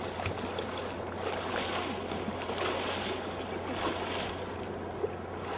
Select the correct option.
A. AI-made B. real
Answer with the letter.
B